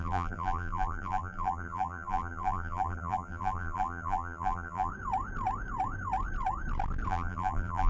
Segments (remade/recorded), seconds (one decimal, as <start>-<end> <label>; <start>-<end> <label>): 0.0-4.9 remade; 4.9-7.1 recorded; 7.1-7.9 remade